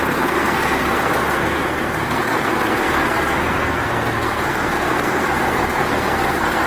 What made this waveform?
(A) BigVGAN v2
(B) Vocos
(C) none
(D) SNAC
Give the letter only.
D